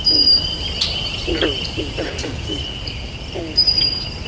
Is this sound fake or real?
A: real